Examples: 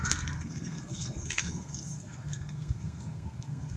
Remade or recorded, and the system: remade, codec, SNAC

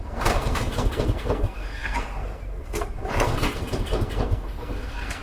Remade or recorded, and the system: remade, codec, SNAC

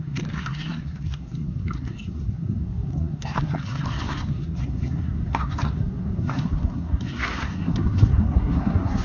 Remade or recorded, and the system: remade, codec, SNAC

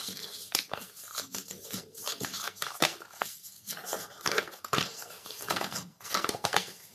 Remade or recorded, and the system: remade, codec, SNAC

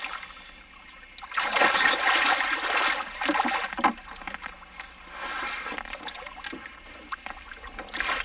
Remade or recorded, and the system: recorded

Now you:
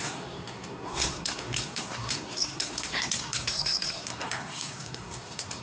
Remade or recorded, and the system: remade, codec, SNAC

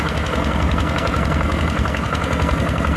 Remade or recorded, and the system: remade, codec, SNAC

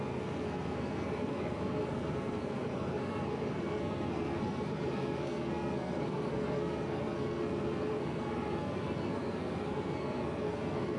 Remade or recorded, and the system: remade, codec, SNAC